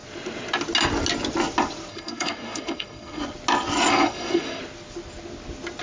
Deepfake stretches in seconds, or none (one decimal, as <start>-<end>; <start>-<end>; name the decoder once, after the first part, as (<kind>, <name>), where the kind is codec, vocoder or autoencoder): 1.9-3.2 (codec, SNAC); 3.9-4.6